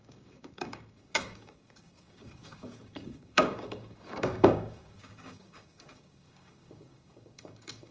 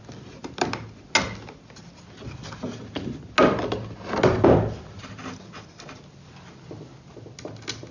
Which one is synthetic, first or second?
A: first